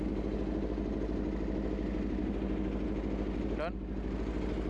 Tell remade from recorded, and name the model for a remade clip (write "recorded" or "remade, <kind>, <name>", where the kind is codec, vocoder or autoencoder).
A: recorded